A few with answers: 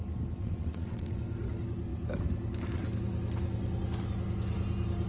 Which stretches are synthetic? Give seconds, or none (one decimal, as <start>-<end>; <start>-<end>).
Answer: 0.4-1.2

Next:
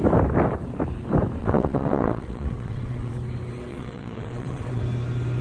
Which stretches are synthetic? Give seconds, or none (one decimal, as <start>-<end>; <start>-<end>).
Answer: 1.4-3.1; 3.7-4.8

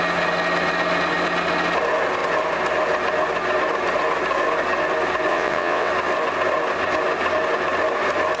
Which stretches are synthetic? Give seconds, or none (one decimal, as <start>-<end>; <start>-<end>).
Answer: 5.3-5.9